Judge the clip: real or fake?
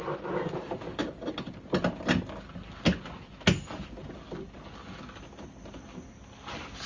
real